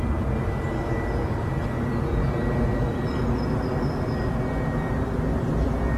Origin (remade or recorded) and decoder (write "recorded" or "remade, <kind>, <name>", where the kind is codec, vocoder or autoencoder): recorded